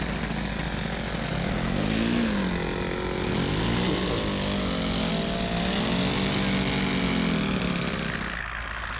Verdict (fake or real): real